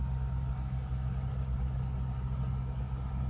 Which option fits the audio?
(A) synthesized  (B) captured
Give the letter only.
B